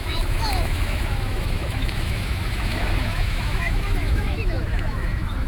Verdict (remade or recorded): remade